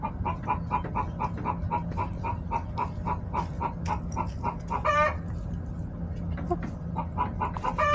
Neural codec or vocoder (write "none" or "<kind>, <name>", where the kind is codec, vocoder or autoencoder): none